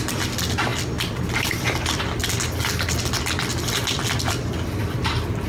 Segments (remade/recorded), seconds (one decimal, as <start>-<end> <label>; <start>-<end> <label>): 0.0-5.5 recorded